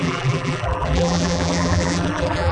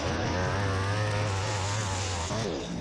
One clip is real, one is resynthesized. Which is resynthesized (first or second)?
first